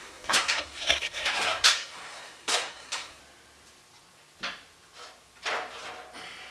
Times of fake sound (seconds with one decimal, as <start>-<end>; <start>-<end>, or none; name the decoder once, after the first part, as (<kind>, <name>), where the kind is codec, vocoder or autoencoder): 0.0-3.2 (codec, SNAC)